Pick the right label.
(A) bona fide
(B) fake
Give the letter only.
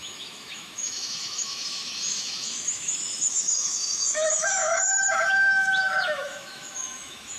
B